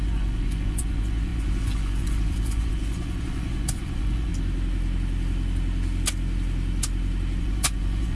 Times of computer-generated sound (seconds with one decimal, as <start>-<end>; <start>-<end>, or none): 0.0-4.3; 7.4-8.1